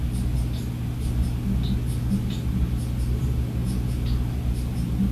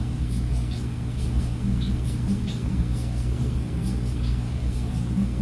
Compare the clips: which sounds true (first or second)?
first